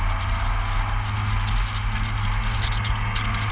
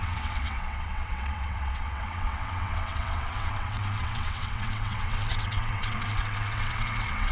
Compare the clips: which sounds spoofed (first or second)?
second